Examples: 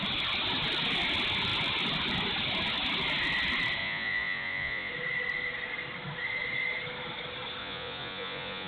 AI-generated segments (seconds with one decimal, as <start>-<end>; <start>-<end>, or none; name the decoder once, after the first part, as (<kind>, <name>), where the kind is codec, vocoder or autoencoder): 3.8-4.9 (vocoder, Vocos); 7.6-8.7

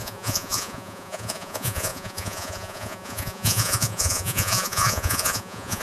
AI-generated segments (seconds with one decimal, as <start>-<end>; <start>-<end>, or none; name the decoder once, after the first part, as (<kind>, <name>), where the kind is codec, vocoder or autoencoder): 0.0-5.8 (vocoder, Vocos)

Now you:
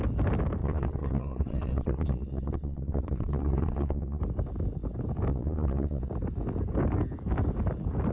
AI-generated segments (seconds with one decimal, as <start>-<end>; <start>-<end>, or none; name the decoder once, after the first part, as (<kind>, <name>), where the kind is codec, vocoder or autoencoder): 0.6-4.2 (vocoder, Vocos); 5.3-6.1

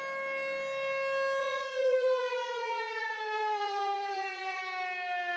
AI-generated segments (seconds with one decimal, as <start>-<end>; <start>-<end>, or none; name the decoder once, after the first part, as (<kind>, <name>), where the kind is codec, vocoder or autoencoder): 1.4-4.6 (vocoder, Vocos)

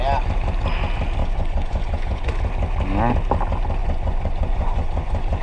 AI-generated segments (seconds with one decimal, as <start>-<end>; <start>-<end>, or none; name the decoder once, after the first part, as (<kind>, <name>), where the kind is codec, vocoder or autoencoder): 1.2-2.3 (vocoder, Vocos); 3.8-5.4

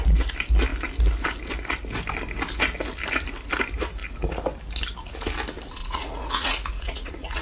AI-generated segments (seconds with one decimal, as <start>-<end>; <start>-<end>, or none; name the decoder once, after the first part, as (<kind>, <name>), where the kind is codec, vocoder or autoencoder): 5.8-7.4 (vocoder, Vocos)

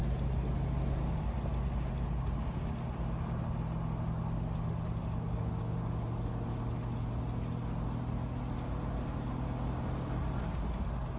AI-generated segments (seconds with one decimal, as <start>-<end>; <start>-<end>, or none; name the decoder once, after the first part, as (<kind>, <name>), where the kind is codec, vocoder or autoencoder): none